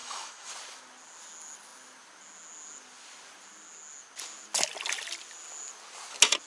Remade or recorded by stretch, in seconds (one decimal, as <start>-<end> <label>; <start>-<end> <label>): 0.0-0.5 remade; 0.5-6.5 recorded